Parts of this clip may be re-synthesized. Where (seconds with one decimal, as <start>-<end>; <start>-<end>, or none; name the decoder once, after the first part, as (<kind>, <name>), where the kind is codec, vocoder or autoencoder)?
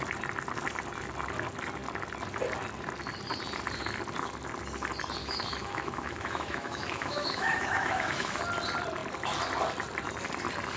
5.2-8.4 (autoencoder, DAC-VAE)